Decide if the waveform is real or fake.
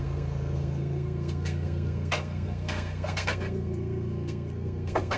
fake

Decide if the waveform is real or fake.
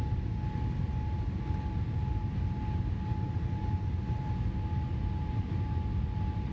real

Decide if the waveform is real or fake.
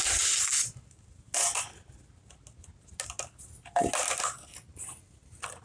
real